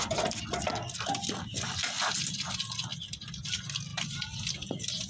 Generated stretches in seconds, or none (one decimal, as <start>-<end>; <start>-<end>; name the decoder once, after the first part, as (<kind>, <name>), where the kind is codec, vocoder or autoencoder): none